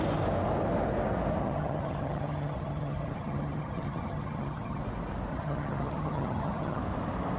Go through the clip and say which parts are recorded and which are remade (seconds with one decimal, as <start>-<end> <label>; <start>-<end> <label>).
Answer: 0.0-1.4 recorded; 1.4-4.8 remade; 4.8-5.3 recorded; 5.3-6.8 remade; 6.8-7.4 recorded